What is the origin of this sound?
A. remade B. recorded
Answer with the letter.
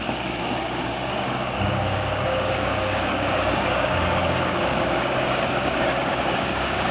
A